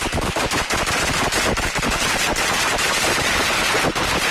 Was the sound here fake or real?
real